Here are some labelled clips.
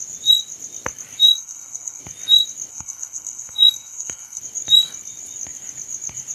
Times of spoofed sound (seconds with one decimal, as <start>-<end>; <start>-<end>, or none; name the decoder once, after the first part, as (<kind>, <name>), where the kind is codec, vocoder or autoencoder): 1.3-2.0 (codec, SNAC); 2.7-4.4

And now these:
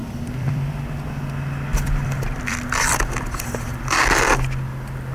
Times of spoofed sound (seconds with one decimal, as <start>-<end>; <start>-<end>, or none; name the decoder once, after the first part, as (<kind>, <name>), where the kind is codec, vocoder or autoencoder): 0.0-0.8 (vocoder, BigVGAN v2); 1.7-3.8

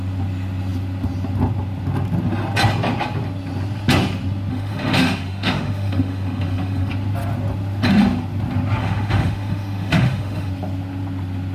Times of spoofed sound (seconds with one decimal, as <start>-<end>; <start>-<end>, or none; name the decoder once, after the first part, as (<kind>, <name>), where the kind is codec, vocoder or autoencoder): 4.5-6.9 (autoencoder, DAC-VAE); 8.8-10.5